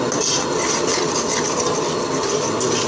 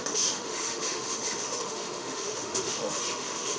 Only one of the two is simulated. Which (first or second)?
second